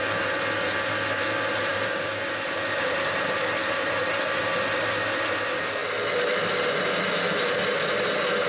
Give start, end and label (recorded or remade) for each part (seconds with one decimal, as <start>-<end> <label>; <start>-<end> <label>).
0.0-1.7 recorded; 1.7-4.4 remade; 4.4-8.5 recorded